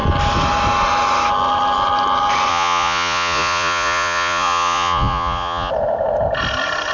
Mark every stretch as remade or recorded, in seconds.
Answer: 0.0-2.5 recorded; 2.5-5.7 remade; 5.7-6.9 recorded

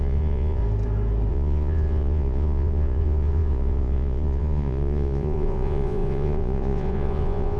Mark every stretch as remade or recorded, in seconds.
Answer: 0.0-0.6 remade; 0.6-1.3 recorded; 1.3-7.6 remade

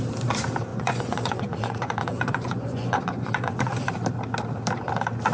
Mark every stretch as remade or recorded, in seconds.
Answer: 0.0-0.7 recorded; 0.7-3.9 remade; 3.9-5.3 recorded

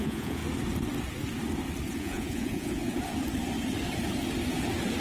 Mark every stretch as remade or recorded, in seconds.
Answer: 0.0-0.4 remade; 0.4-1.9 recorded; 1.9-2.8 remade; 2.8-5.0 recorded

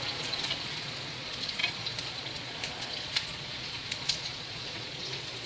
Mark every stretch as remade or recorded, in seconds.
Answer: 0.0-5.5 remade